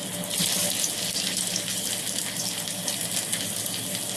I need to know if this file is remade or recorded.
recorded